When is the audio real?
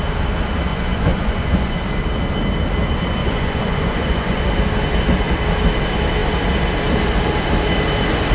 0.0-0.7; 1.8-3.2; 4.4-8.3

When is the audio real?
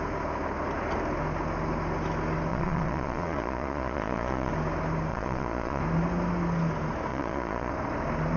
0.0-2.5; 4.5-5.1; 5.8-7.1; 7.7-8.4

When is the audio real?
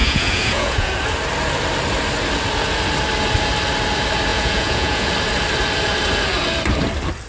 0.9-4.3; 5.1-7.3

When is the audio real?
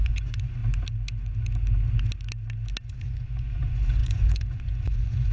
0.6-2.8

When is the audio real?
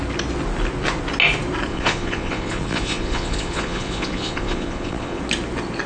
0.0-1.7; 5.2-5.9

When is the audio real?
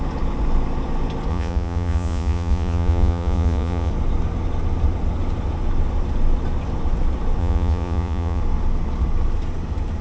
0.0-1.3; 3.9-7.4; 8.4-10.0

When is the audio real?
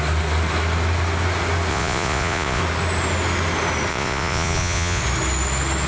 0.0-1.7; 2.6-3.9; 5.0-5.9